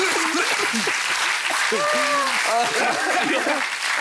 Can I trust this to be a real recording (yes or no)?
no